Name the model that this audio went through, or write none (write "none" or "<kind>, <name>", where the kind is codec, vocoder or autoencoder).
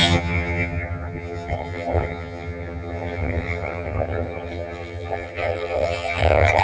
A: vocoder, HiFi-GAN